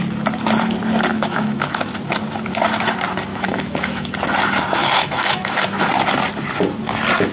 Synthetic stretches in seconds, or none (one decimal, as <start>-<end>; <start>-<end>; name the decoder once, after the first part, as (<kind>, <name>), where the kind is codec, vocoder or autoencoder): 1.1-1.9 (autoencoder, DAC-VAE); 3.3-4.1; 4.8-5.8